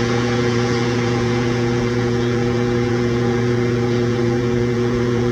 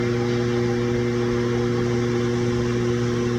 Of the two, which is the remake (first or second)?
first